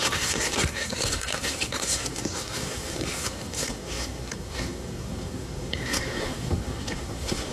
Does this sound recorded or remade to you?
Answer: remade